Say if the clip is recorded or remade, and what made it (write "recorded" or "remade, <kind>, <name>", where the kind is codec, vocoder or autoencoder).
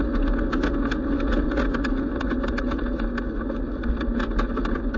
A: recorded